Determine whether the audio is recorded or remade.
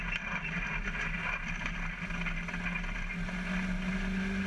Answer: recorded